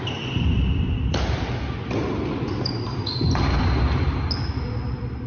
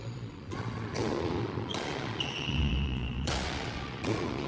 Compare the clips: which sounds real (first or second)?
first